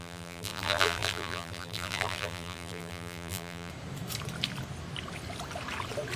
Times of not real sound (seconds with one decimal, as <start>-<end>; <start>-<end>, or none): 0.0-3.7